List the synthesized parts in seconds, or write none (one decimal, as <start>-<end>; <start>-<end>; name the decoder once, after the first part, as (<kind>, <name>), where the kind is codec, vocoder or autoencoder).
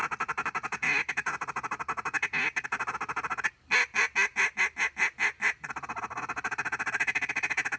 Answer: none